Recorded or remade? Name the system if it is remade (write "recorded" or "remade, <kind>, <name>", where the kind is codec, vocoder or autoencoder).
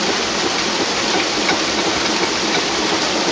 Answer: recorded